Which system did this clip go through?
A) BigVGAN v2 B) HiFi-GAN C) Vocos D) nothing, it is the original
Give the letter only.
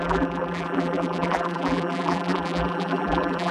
A